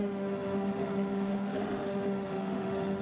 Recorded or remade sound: remade